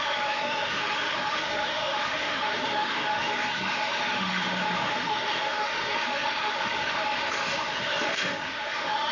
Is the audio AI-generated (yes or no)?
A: yes